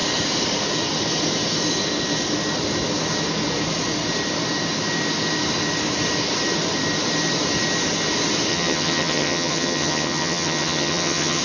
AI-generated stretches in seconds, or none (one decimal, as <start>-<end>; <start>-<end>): 8.5-11.4